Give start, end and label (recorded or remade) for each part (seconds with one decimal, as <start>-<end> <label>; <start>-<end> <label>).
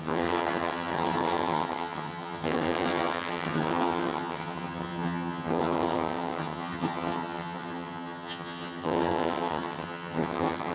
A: 0.0-10.7 remade